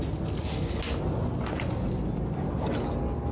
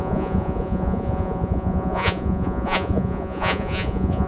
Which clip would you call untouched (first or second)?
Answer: first